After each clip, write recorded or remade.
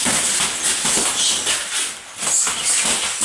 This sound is recorded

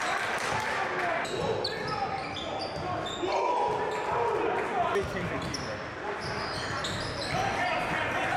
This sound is recorded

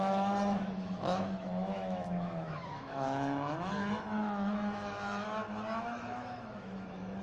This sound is remade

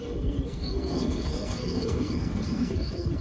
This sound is remade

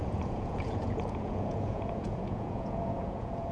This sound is remade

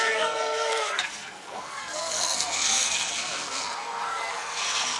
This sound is remade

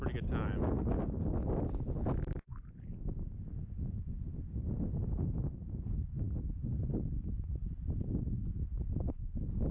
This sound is recorded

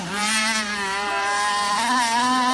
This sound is remade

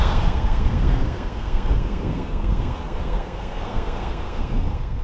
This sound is remade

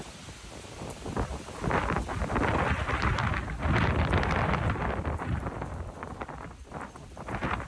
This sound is remade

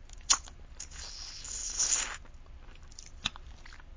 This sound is recorded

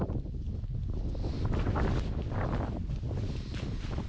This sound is recorded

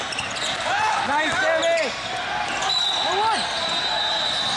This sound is recorded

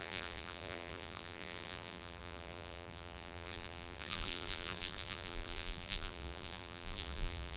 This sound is remade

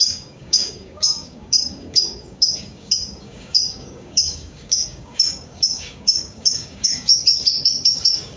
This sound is remade